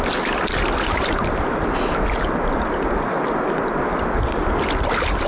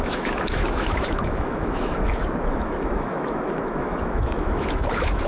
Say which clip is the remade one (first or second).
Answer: second